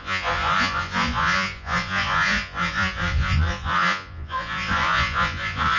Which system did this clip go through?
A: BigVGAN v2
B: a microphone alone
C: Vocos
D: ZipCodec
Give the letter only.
C